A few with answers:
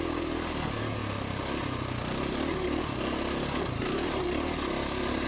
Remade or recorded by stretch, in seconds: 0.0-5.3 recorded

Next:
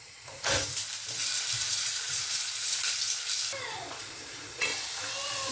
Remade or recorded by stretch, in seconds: 0.0-0.8 remade; 0.8-1.6 recorded; 1.6-2.6 remade; 2.6-3.6 recorded; 3.6-4.7 remade; 4.7-5.5 recorded